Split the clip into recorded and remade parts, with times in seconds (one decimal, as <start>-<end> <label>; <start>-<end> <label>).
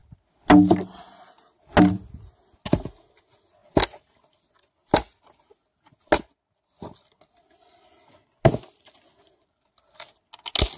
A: 0.0-10.8 recorded